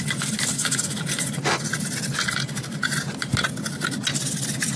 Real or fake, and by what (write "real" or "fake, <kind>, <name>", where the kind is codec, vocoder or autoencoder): real